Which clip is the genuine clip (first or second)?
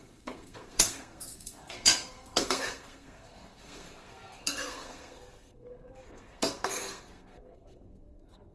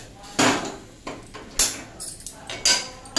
second